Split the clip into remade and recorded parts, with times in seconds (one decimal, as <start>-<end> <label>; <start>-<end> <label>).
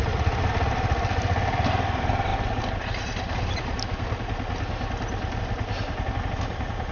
0.0-6.9 recorded